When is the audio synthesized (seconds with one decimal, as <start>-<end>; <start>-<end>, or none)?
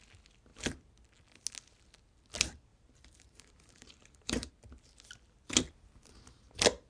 2.7-4.5